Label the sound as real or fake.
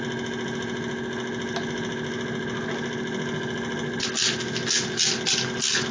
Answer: real